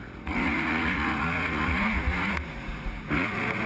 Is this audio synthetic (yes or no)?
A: yes